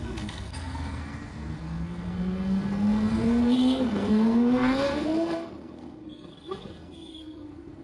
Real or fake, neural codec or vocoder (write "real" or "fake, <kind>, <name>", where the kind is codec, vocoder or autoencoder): fake, codec, SNAC